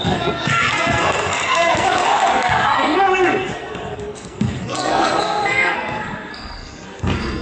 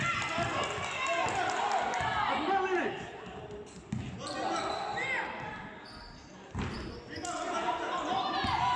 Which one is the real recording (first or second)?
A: second